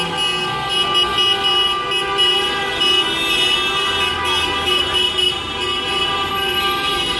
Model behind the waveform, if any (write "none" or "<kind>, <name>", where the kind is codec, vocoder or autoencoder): none